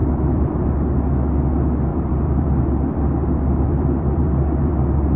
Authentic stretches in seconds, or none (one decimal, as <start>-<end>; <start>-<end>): 0.7-1.9